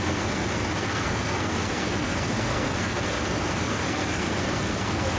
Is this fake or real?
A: fake